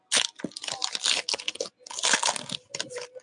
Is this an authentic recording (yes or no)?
yes